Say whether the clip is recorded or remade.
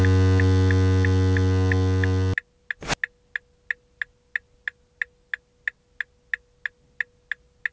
recorded